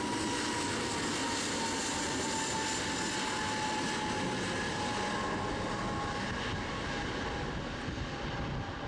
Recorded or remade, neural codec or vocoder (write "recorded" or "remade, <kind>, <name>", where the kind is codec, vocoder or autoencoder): recorded